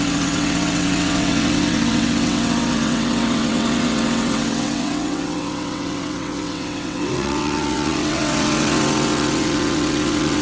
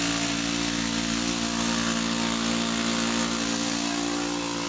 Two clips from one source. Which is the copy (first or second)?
first